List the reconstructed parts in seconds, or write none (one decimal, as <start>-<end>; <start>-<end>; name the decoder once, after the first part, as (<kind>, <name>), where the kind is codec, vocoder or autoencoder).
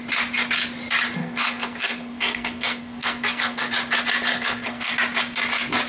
1.2-3.7 (codec, SNAC); 4.3-4.9